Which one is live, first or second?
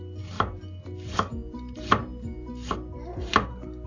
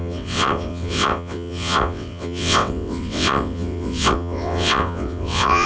first